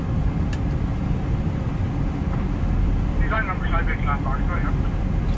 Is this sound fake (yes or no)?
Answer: yes